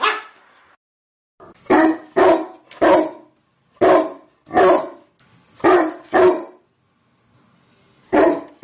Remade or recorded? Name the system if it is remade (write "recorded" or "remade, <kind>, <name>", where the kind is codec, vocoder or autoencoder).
recorded